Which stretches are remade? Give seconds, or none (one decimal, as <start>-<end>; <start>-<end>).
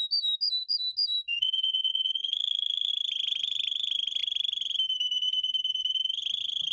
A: 1.3-2.9